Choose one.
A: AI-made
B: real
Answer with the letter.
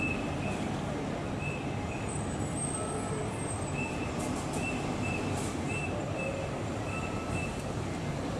B